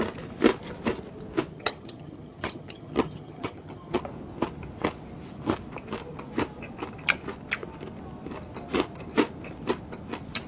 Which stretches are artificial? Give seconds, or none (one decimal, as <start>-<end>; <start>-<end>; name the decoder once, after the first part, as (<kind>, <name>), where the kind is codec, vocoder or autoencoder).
1.5-4.0 (vocoder, HiFi-GAN)